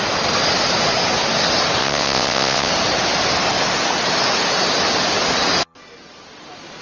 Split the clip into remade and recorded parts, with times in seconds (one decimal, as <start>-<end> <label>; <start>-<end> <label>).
0.0-1.8 recorded; 1.8-2.7 remade; 2.7-6.8 recorded

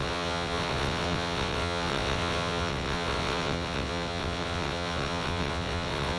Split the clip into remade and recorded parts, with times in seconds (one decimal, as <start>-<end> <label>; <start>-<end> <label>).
0.0-6.2 remade

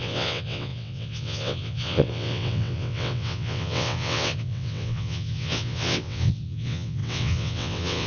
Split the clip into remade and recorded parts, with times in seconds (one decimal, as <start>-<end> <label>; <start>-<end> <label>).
0.0-8.1 remade

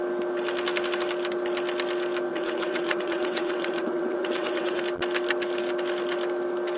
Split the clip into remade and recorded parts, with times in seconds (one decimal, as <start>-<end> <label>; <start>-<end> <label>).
0.0-2.3 recorded; 2.3-4.8 remade; 4.8-6.8 recorded

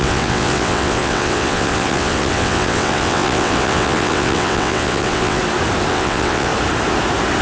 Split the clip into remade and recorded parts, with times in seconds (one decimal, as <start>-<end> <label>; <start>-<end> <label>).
0.0-5.4 remade; 5.4-5.9 recorded; 5.9-6.5 remade; 6.5-7.4 recorded

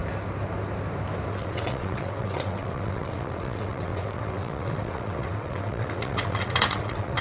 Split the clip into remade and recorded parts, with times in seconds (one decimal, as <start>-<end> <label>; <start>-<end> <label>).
0.0-1.3 recorded; 1.3-7.2 remade

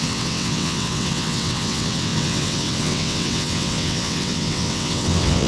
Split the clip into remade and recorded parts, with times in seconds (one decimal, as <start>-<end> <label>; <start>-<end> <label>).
0.0-5.5 remade